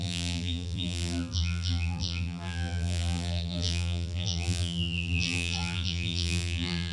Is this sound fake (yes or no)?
yes